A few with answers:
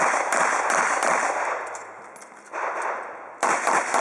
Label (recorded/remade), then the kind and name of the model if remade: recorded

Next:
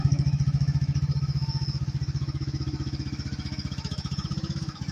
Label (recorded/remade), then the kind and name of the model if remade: remade, autoencoder, DAC-VAE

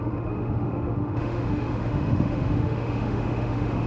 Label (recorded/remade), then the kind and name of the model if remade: remade, autoencoder, DAC-VAE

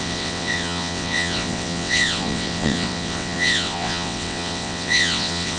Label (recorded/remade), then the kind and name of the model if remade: remade, vocoder, WaveNeXt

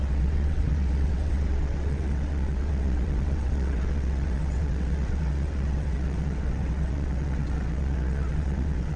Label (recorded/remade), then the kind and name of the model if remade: remade, vocoder, WaveNeXt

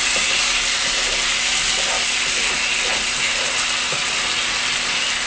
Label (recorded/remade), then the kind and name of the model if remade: recorded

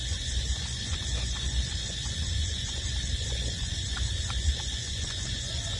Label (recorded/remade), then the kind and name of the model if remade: remade, vocoder, Vocos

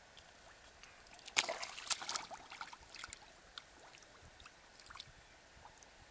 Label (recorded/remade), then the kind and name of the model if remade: recorded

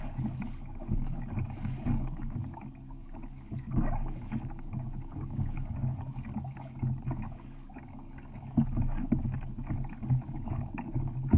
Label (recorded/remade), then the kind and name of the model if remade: remade, codec, DAC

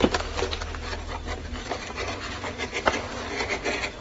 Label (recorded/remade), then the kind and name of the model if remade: recorded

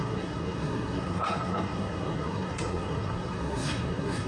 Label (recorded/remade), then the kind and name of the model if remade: remade, codec, SNAC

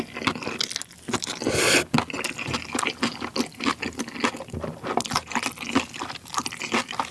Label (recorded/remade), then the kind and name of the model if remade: recorded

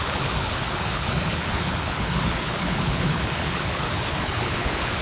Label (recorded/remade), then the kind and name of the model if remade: remade, codec, HILCodec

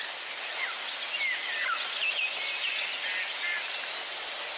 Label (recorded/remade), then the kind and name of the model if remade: recorded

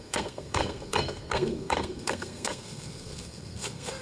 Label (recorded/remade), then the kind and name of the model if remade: remade, codec, SNAC